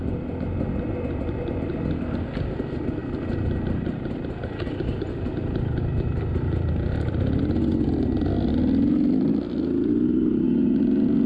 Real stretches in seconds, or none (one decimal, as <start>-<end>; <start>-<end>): 0.0-11.3